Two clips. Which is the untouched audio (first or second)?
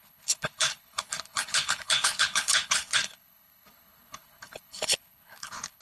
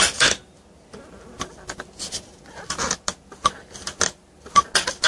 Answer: second